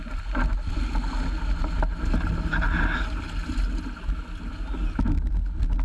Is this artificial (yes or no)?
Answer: no